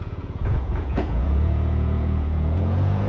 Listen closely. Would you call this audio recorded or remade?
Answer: remade